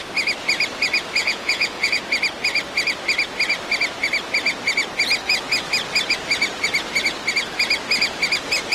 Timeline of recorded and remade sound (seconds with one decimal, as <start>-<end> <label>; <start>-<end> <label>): 0.0-1.2 recorded; 1.2-2.0 remade; 2.0-8.7 recorded